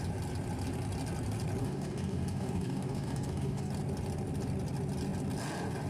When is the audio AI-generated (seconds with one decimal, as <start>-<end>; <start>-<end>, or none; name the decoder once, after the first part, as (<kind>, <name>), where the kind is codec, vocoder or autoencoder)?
1.6-3.7 (codec, DAC)